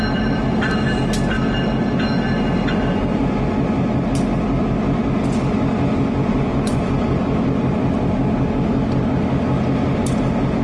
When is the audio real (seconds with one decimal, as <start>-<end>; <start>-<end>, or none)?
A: 0.0-6.3; 6.8-10.6